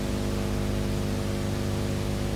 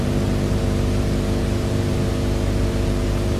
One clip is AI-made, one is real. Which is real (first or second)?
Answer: first